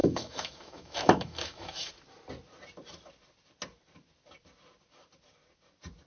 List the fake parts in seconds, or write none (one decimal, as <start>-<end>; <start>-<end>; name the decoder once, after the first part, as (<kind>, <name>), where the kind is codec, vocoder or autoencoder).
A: 0.0-1.9 (autoencoder, DAC-VAE)